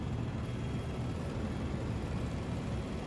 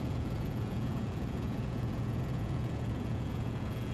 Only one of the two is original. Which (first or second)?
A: first